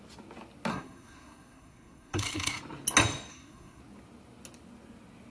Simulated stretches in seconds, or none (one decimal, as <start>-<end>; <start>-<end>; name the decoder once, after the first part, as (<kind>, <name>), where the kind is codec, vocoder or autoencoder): 0.7-2.6 (codec, SNAC); 3.3-3.8